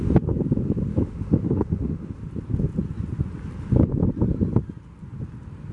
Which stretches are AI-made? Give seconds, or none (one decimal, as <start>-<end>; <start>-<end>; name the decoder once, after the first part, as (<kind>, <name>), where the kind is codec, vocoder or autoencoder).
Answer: 0.9-2.2 (autoencoder, DAC-VAE)